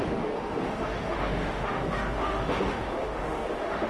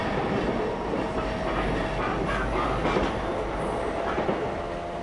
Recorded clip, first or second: second